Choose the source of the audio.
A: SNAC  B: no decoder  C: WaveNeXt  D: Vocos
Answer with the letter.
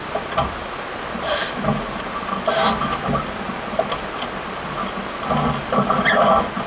B